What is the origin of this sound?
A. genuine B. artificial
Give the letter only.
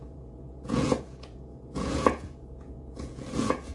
B